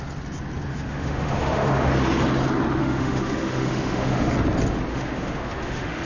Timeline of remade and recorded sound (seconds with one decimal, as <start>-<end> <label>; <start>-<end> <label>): 0.0-0.7 recorded; 0.7-1.9 remade; 1.9-2.8 recorded; 2.8-4.3 remade; 4.3-4.9 recorded; 4.9-6.0 remade